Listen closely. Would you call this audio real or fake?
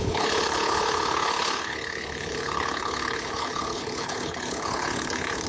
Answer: fake